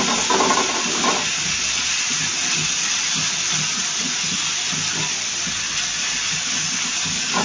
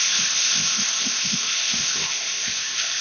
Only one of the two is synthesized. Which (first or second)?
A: second